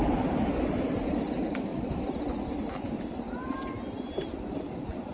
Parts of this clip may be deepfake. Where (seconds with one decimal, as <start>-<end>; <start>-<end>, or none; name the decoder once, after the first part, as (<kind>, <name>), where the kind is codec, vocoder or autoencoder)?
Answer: none